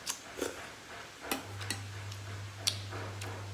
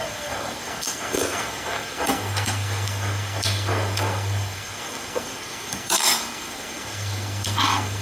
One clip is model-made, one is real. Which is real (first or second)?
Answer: first